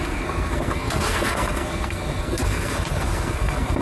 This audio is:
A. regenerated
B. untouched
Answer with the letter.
A